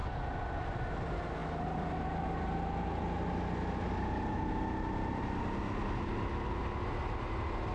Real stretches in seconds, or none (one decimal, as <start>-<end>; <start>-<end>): 0.0-7.7